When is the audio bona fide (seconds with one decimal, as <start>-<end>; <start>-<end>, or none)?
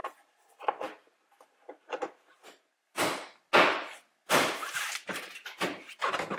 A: 3.4-4.2